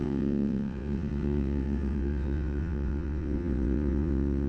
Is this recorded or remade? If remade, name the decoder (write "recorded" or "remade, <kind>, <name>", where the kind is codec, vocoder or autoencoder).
remade, vocoder, WaveNeXt